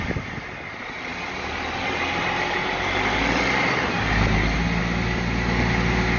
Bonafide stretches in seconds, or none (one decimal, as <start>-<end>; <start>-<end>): 0.0-6.2